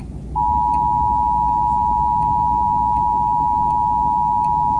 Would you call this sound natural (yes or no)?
yes